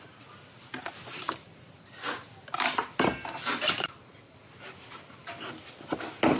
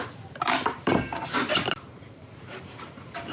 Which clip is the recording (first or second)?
first